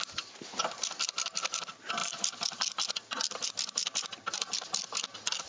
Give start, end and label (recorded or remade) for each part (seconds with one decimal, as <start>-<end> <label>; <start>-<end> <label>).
0.0-5.5 recorded